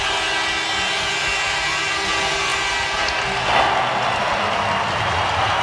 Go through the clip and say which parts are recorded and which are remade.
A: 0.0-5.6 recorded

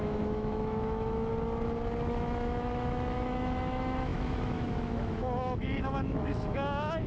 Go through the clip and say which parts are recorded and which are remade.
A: 0.0-1.3 remade; 1.3-2.0 recorded; 2.0-7.1 remade

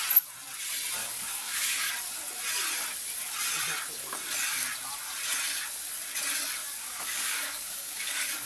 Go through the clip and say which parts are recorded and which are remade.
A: 0.0-1.0 recorded; 1.0-1.9 remade; 1.9-6.6 recorded; 6.6-8.5 remade

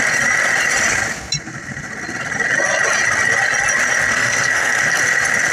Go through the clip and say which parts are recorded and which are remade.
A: 0.0-4.1 recorded; 4.1-5.0 remade; 5.0-5.5 recorded

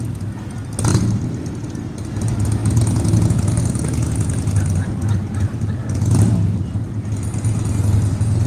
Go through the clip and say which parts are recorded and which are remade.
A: 0.0-0.9 recorded; 0.9-1.4 remade; 1.4-8.5 recorded

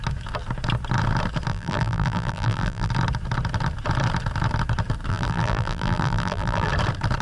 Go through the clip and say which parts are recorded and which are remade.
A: 0.0-1.5 recorded; 1.5-2.9 remade; 2.9-5.1 recorded; 5.1-6.7 remade; 6.7-7.2 recorded